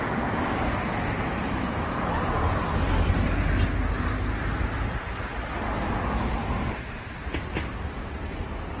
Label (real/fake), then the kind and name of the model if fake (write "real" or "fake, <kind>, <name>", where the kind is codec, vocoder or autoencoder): real